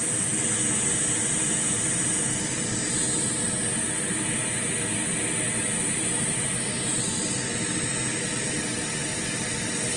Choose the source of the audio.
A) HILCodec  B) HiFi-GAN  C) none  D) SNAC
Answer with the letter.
C